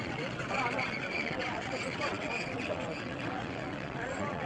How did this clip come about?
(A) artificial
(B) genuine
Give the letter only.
A